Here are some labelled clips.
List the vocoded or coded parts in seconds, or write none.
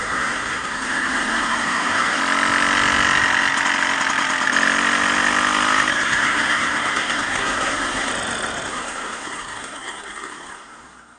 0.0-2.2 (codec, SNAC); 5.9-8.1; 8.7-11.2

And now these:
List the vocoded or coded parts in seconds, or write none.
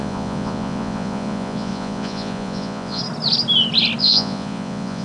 0.0-3.0 (vocoder, Vocos); 4.0-5.0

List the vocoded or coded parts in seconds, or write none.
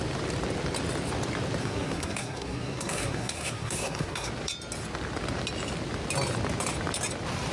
1.6-4.3 (codec, SNAC)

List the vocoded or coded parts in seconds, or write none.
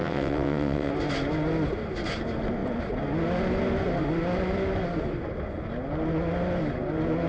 0.0-0.9 (vocoder, WaveNeXt)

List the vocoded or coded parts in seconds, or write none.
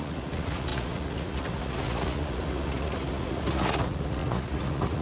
0.0-5.0 (vocoder, Vocos)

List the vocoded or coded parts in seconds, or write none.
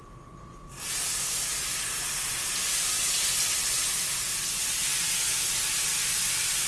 none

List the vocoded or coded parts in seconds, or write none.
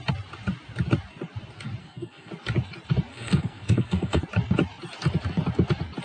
1.8-2.3 (codec, SNAC); 3.1-4.2